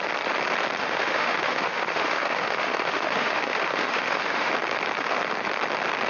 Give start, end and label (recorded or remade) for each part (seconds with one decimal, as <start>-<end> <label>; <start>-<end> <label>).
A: 0.0-0.8 recorded; 0.8-4.5 remade; 4.5-6.1 recorded

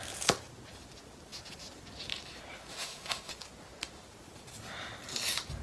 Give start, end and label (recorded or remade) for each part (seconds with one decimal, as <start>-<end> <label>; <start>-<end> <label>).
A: 0.0-2.7 recorded; 2.7-3.3 remade; 3.3-5.6 recorded

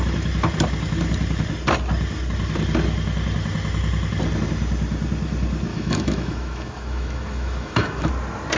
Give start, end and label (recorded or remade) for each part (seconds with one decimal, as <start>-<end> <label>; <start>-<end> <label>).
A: 0.0-5.7 recorded; 5.7-8.1 remade; 8.1-8.6 recorded

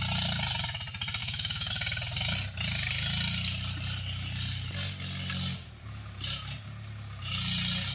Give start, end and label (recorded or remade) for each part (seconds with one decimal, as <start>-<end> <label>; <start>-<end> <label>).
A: 0.0-1.2 recorded; 1.2-1.7 remade; 1.7-7.9 recorded

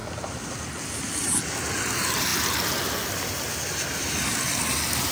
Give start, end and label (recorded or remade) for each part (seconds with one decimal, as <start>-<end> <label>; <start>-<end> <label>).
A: 0.0-5.1 recorded

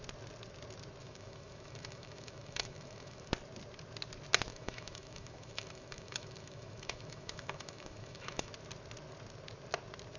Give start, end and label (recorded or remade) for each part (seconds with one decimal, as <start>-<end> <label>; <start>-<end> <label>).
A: 0.0-1.0 recorded; 1.0-3.3 remade; 3.3-4.5 recorded; 4.5-8.5 remade; 8.5-10.2 recorded